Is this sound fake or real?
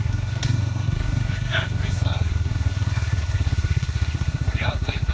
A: fake